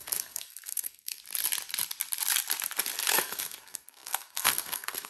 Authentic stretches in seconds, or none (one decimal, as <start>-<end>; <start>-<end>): 1.2-3.1

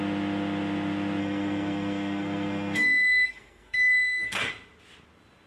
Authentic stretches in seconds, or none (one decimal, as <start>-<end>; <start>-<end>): 0.0-1.2; 4.5-5.5

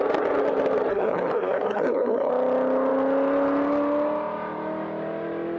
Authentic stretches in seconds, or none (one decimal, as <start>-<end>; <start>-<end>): 0.0-0.9; 2.3-5.6

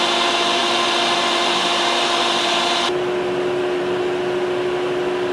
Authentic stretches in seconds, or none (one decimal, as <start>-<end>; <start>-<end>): 0.0-5.3

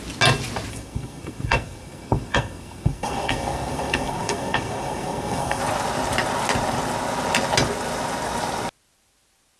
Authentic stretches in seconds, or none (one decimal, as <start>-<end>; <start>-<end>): 0.0-0.7; 5.6-9.6

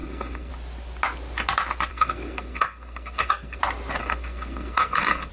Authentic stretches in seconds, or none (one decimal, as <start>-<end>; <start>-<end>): 0.5-1.9; 3.6-4.0

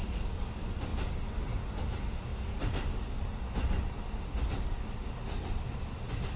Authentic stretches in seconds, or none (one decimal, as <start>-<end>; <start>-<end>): 0.0-6.4

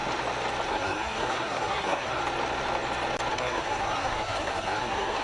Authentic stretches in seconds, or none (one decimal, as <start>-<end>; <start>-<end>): 0.0-0.7; 2.2-3.3